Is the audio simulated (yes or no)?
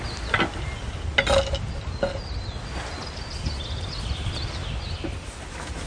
no